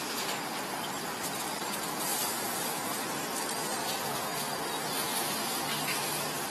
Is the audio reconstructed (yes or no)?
no